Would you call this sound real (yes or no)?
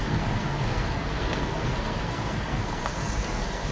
no